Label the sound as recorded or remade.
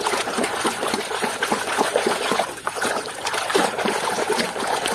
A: remade